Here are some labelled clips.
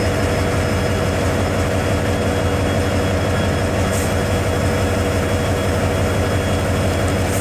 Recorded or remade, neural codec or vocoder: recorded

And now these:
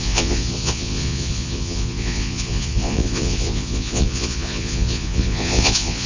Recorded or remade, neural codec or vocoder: remade, vocoder, Vocos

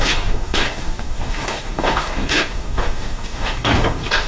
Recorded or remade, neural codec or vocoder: remade, codec, DAC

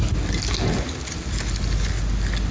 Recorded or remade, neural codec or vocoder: recorded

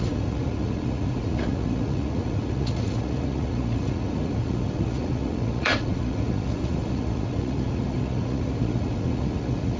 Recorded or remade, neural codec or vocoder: remade, vocoder, Vocos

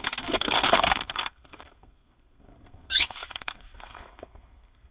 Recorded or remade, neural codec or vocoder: remade, codec, SNAC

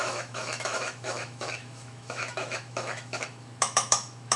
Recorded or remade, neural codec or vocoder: remade, autoencoder, DAC-VAE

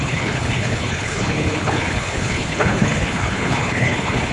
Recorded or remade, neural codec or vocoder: remade, codec, HILCodec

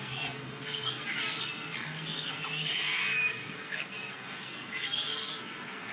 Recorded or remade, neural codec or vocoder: remade, codec, SNAC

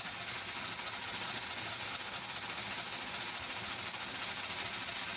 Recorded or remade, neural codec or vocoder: recorded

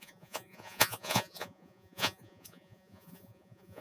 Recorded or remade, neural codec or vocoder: remade, vocoder, Vocos